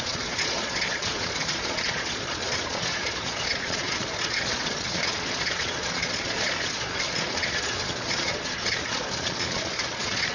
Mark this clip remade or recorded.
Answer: remade